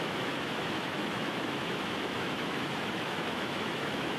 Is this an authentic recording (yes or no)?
no